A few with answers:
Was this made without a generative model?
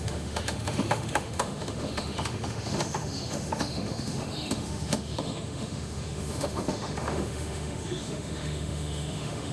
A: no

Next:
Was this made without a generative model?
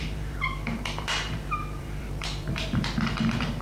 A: no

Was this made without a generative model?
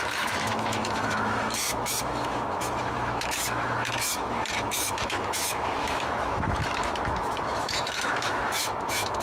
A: no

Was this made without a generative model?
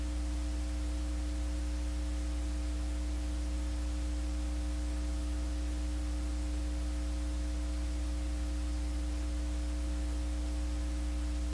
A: yes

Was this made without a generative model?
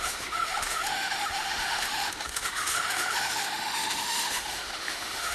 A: no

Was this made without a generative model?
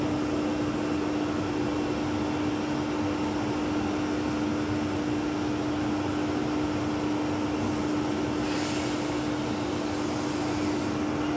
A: yes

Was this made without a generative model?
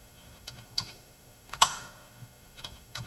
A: no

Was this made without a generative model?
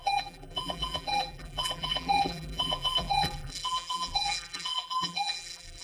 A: no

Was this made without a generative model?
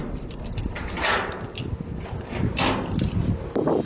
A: yes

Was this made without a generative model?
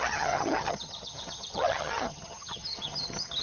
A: no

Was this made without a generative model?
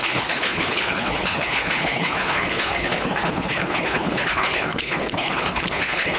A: no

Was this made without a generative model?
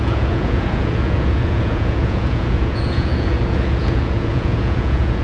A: no